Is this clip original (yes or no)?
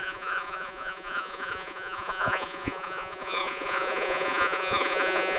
no